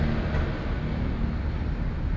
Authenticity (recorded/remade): recorded